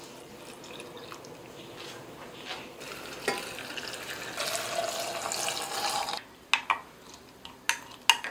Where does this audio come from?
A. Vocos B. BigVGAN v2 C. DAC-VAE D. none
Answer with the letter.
D